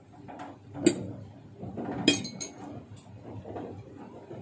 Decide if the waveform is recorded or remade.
recorded